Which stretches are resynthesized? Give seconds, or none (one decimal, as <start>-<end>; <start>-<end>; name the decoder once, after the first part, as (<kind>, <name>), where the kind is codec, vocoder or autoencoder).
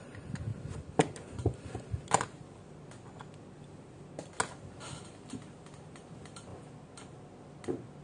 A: none